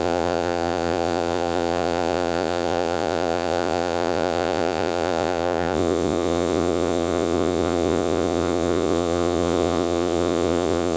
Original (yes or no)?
no